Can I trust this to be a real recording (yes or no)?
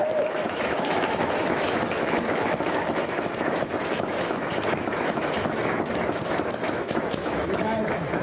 no